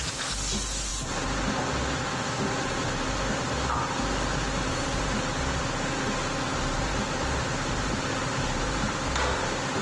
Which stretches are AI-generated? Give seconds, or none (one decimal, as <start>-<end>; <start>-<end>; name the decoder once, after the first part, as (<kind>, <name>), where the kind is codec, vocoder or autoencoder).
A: none